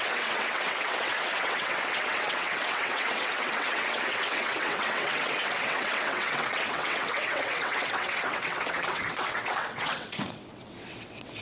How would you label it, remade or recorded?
remade